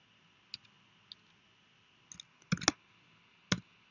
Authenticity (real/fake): real